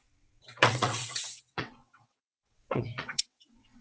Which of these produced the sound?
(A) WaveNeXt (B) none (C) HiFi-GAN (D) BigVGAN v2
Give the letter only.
A